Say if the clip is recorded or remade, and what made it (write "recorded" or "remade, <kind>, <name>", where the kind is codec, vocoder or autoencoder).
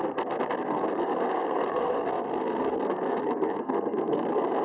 remade, codec, SNAC